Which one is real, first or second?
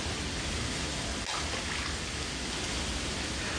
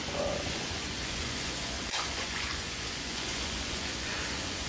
first